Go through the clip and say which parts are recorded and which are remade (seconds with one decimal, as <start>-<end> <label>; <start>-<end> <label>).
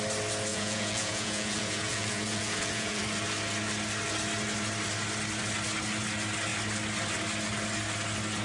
0.0-0.5 recorded; 0.5-3.0 remade; 3.0-8.4 recorded